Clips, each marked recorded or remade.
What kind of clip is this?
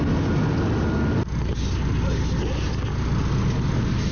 recorded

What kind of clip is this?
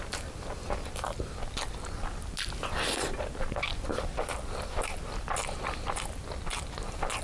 recorded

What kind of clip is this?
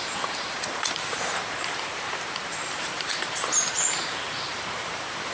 remade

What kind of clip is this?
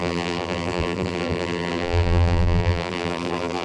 remade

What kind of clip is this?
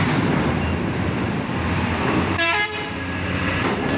remade